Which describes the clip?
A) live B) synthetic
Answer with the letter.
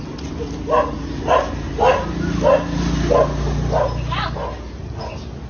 A